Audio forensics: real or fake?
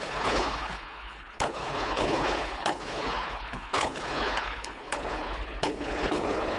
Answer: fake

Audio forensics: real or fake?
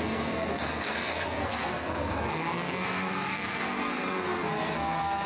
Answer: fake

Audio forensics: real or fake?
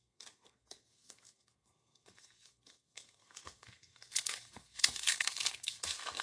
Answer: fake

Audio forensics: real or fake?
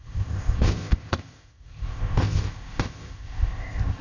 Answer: fake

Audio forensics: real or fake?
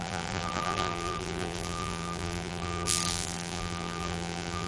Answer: fake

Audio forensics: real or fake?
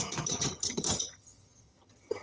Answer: fake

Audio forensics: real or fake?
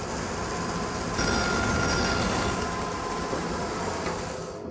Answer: real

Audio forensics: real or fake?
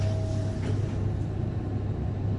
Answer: real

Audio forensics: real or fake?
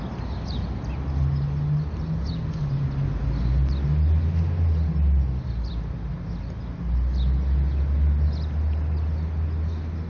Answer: real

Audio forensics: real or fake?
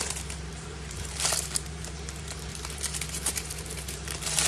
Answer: fake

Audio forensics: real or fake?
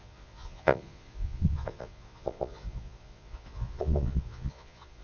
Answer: fake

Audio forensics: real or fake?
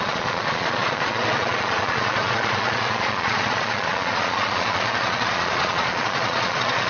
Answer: fake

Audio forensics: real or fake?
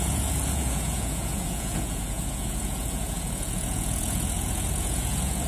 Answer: fake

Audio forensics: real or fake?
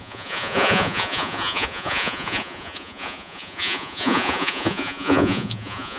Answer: fake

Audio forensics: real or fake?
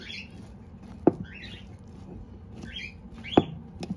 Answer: real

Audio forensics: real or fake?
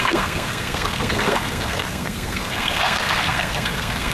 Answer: fake